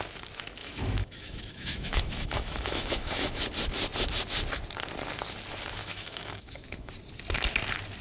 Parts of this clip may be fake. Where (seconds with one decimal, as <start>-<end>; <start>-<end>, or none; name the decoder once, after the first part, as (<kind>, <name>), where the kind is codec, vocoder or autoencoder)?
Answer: 0.6-3.4 (autoencoder, DAC-VAE); 5.8-6.9